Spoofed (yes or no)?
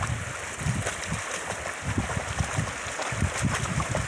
no